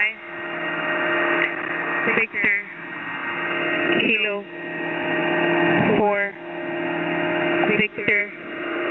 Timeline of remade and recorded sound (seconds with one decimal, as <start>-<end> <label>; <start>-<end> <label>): 0.0-7.9 recorded; 7.9-8.9 remade